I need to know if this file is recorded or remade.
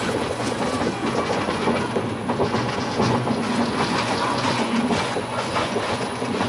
remade